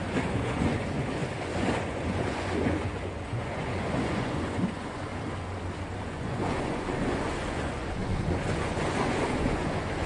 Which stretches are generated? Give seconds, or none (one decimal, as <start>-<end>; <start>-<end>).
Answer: 0.0-5.1; 6.0-10.1